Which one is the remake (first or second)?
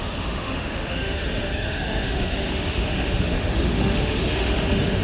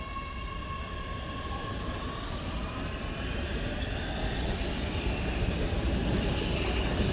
first